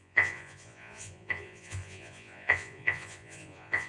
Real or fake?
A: fake